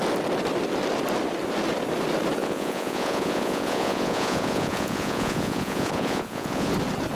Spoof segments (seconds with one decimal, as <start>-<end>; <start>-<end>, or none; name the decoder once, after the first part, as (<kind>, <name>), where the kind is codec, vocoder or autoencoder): 2.4-6.7 (vocoder, Vocos)